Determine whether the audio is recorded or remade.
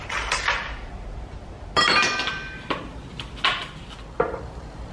recorded